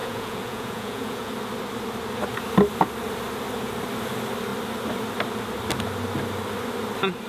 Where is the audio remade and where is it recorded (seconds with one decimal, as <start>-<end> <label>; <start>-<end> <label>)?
0.0-1.3 remade; 1.3-7.3 recorded